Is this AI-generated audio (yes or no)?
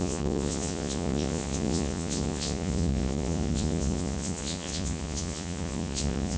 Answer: yes